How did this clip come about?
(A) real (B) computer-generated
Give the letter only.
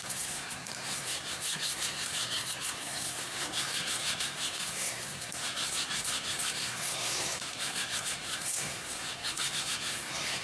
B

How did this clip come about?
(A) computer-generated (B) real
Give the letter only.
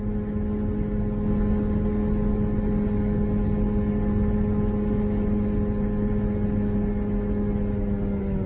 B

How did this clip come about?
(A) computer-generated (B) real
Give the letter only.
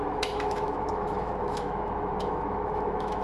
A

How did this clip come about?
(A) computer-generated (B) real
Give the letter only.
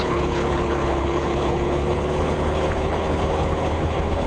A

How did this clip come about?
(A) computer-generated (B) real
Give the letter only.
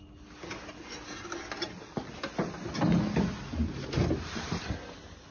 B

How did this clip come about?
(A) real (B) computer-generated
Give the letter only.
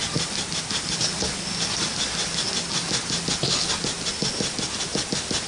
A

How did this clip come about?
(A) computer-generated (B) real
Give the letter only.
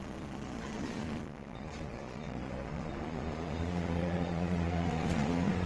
A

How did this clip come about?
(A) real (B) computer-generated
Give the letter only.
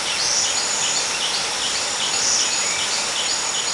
A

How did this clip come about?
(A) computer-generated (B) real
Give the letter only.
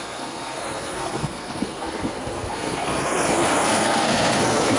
A